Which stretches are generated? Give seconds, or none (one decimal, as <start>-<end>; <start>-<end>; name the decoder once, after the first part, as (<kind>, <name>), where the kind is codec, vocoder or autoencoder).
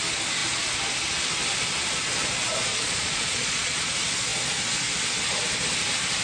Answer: 2.7-3.9 (vocoder, Vocos)